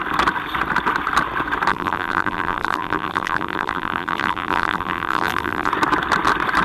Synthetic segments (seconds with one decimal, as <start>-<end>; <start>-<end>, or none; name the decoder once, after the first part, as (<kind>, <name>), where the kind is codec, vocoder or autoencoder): 1.7-5.7 (vocoder, BigVGAN v2)